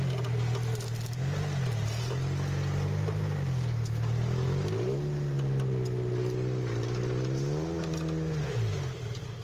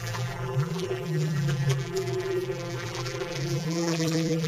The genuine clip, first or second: first